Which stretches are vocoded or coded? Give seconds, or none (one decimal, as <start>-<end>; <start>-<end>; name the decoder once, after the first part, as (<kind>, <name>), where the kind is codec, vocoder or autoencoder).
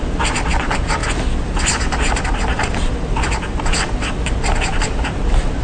none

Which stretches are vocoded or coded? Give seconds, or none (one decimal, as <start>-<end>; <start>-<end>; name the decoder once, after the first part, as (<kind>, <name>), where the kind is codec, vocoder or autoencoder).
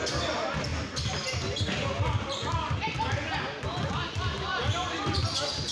none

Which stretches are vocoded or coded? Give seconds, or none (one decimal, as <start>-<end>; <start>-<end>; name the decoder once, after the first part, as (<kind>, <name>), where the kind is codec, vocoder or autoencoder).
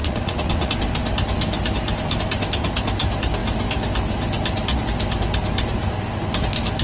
0.0-0.7 (vocoder, WaveNeXt)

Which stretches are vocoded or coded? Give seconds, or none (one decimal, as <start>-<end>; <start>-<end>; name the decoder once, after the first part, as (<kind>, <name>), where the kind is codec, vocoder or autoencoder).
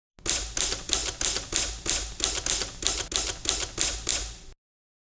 none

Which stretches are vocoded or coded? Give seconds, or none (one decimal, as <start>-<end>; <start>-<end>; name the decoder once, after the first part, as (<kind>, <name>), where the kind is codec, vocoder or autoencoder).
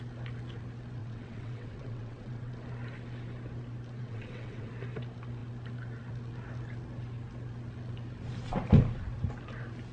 1.0-2.5 (vocoder, WaveNeXt); 4.0-4.7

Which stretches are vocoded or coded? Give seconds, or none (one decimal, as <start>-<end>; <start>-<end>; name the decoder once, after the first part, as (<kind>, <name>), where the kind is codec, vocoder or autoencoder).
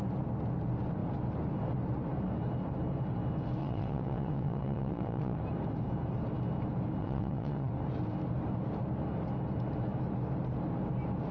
3.6-5.4 (vocoder, WaveNeXt); 7.0-7.7